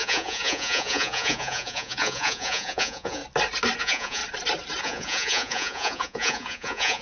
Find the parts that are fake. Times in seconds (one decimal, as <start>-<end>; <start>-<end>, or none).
0.0-3.2; 3.8-4.2; 4.8-7.0